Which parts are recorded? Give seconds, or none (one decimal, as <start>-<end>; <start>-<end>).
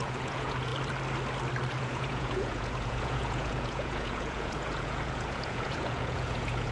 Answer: 0.7-1.8